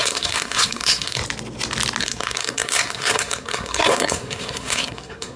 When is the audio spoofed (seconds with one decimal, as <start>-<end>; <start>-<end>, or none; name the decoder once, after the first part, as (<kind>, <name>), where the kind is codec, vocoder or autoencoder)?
0.0-1.2 (codec, SNAC); 2.0-5.4